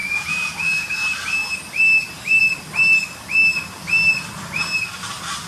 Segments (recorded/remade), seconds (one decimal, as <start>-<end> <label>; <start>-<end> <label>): 0.0-0.9 remade; 0.9-5.5 recorded